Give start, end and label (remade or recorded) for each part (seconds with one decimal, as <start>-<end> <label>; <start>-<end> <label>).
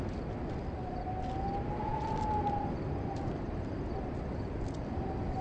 0.0-5.4 recorded